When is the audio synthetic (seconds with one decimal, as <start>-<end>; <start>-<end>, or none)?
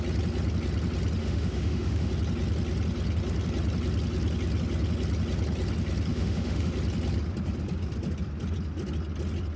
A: 1.2-2.1; 6.1-6.7